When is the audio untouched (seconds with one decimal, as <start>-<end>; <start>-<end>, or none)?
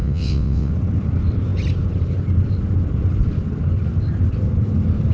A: 0.7-5.1